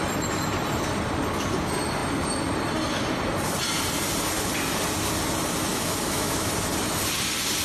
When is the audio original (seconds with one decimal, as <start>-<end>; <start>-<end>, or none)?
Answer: 0.0-5.7; 6.5-7.6